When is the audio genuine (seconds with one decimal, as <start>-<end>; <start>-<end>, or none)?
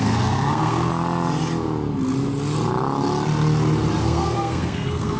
0.9-4.0